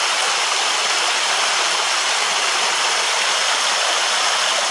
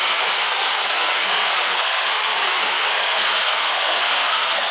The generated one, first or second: second